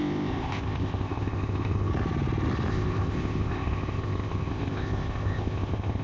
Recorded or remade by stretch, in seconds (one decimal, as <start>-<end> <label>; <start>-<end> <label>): 0.0-1.9 remade; 1.9-2.7 recorded; 2.7-6.0 remade